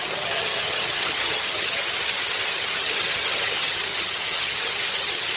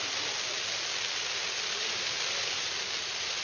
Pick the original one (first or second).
second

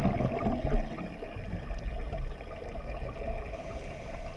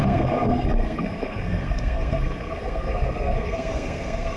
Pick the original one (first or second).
first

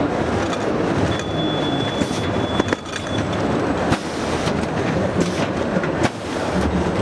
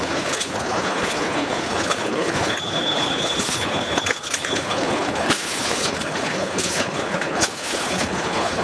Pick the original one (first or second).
first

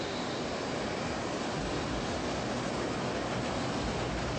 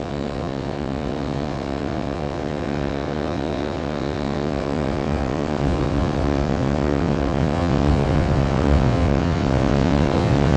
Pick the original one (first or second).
first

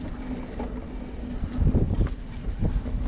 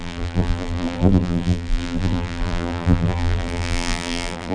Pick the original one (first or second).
first